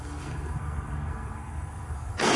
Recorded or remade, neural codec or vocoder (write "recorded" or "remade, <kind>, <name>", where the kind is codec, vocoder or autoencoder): remade, codec, SNAC